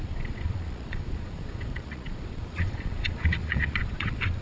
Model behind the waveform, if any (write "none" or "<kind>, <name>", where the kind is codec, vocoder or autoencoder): vocoder, Vocos